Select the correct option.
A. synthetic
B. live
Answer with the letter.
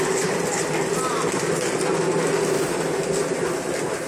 B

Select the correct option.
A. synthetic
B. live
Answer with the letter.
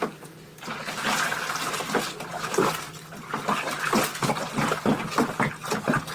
B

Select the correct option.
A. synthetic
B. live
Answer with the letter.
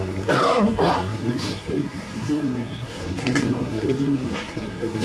A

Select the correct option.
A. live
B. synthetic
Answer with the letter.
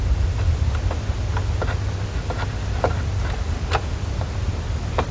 A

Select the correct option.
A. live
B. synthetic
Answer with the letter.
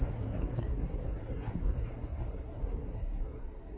B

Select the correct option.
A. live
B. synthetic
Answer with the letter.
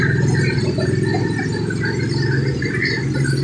A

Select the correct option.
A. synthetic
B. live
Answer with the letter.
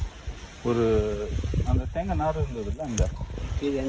B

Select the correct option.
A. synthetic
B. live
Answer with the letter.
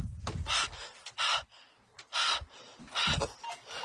B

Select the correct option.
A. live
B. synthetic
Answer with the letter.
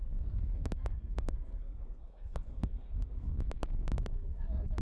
B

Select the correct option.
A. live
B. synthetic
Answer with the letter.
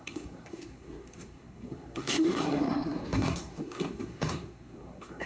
B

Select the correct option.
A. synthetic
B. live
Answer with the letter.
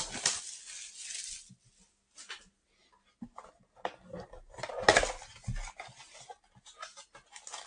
B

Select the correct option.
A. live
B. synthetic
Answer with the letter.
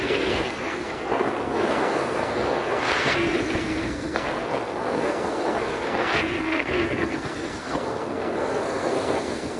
B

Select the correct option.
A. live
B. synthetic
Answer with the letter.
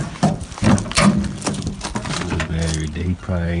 A